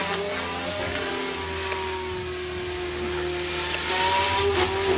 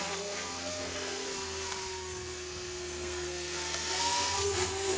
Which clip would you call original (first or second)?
first